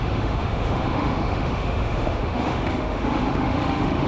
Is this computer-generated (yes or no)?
yes